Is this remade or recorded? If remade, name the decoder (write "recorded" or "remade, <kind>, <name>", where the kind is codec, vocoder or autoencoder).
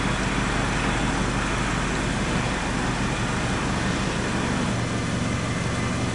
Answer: recorded